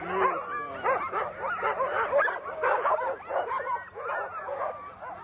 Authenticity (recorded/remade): recorded